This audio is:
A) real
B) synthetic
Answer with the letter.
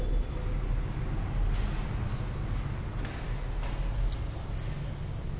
A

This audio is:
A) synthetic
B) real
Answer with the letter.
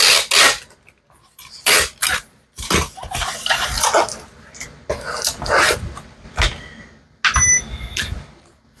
B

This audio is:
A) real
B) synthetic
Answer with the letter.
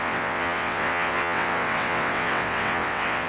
B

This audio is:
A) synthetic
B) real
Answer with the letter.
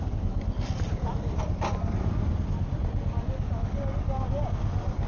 B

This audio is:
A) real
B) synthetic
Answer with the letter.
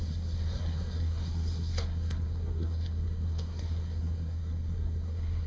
B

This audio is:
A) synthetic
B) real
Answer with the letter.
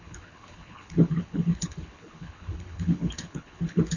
A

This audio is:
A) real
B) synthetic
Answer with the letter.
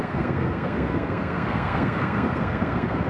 B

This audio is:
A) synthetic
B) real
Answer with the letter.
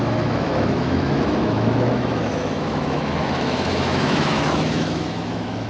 A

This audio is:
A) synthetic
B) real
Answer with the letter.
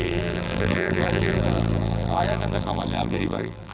A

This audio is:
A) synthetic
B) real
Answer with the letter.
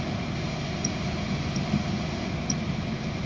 B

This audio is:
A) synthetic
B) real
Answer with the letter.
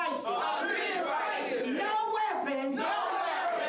B